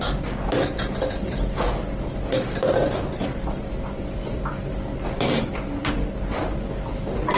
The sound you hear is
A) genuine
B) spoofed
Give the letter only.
A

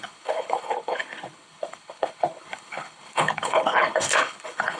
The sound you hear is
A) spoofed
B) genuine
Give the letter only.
A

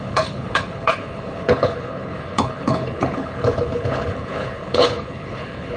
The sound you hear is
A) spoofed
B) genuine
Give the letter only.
A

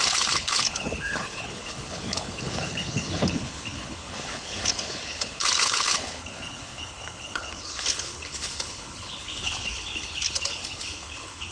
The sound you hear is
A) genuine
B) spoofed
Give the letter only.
B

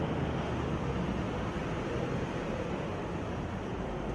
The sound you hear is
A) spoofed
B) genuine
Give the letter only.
B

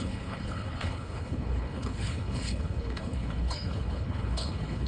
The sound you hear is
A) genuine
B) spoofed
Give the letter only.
B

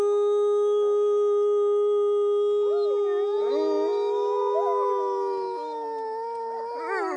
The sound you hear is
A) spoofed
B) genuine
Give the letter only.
B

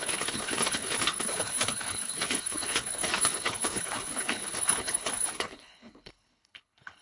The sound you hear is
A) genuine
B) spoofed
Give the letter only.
B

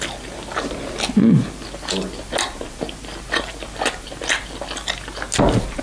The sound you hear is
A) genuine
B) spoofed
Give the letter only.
A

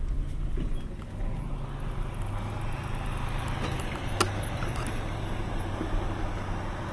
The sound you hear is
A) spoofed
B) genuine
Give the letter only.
B